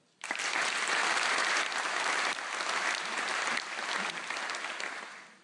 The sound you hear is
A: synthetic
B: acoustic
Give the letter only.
B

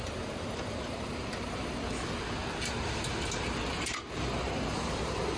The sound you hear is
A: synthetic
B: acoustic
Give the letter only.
B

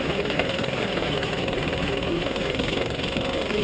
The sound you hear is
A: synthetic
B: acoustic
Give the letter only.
A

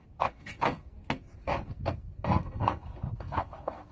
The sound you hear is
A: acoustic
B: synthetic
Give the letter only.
B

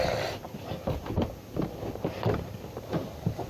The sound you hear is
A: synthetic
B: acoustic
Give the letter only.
B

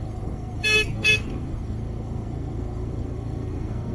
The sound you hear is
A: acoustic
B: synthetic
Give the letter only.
B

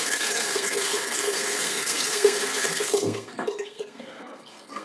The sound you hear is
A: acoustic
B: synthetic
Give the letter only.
B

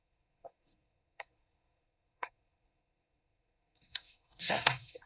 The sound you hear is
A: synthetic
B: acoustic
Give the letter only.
A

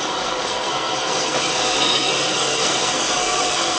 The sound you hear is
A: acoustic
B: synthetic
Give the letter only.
B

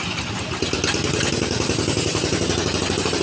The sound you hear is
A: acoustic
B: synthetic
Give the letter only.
A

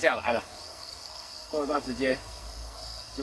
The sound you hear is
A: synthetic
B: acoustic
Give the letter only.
A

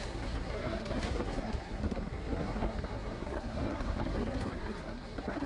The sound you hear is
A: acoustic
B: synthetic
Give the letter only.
B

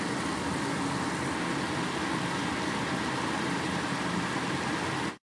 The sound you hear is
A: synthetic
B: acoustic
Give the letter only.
B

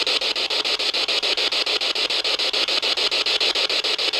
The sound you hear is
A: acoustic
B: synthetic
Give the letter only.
A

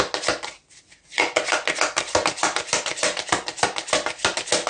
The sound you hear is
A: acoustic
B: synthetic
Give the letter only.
A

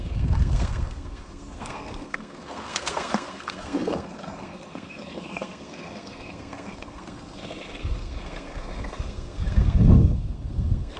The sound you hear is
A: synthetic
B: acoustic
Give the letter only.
A